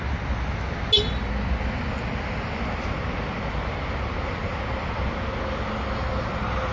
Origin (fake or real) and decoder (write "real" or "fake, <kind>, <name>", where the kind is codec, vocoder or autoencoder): real